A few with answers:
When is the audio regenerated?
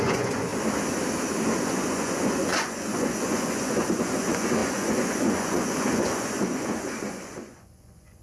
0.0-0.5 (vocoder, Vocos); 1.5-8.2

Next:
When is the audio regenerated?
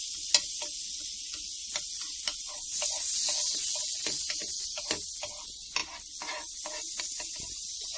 none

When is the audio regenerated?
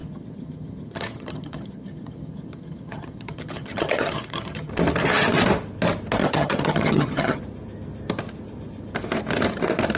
0.0-4.7 (vocoder, HiFi-GAN); 6.2-7.4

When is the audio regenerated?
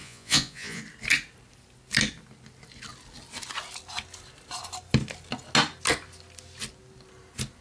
0.0-0.8 (vocoder, Vocos)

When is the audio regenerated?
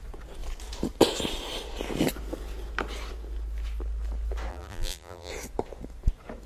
4.5-5.3 (vocoder, BigVGAN v2)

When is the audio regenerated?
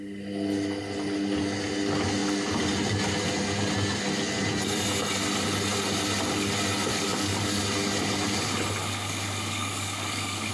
6.9-7.6 (codec, DAC); 8.8-10.5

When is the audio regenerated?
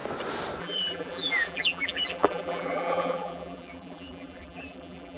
0.6-5.2 (vocoder, BigVGAN v2)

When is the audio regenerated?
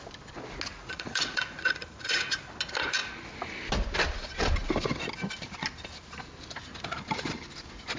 0.7-2.5 (vocoder, Vocos)